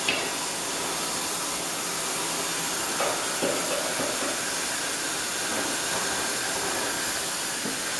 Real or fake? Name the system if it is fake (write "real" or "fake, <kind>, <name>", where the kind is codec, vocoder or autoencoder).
real